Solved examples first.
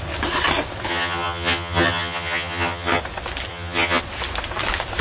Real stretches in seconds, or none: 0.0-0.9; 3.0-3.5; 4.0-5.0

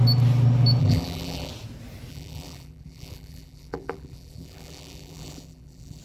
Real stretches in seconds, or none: 0.0-0.8; 1.5-2.1

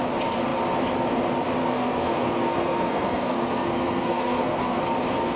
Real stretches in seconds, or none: 0.0-1.6; 4.8-5.4

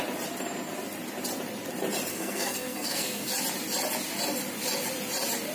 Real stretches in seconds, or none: 0.0-2.1; 3.3-5.5

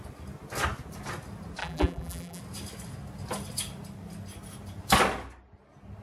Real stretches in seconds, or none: 0.0-1.6; 2.4-6.0

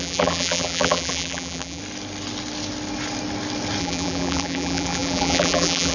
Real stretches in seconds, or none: 1.8-3.8

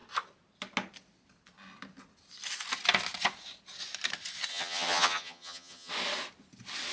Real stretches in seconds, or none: 0.0-4.5; 5.9-6.9